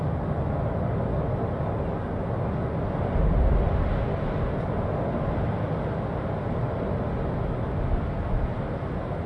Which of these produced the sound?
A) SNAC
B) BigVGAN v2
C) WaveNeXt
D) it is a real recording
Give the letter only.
D